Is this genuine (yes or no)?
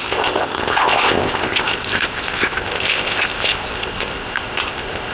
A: no